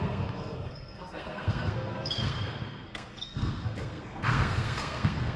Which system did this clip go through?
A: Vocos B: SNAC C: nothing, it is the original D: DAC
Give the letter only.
B